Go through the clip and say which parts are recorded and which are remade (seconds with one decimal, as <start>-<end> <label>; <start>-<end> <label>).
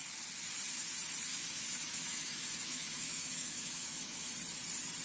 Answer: 0.0-1.3 recorded; 1.3-4.3 remade; 4.3-5.0 recorded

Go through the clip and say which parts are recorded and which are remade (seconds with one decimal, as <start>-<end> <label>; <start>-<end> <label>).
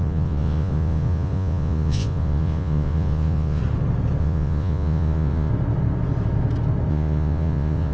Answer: 0.0-3.6 remade; 3.6-4.2 recorded; 4.2-5.5 remade; 5.5-6.9 recorded; 6.9-7.9 remade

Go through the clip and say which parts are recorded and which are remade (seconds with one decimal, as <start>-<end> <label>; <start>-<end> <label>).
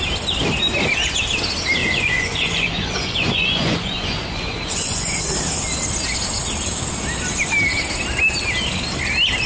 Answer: 0.0-1.8 recorded; 1.8-5.2 remade; 5.2-9.5 recorded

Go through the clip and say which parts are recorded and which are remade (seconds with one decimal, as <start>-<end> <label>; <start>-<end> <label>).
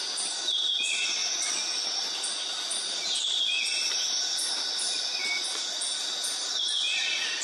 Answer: 0.0-7.4 recorded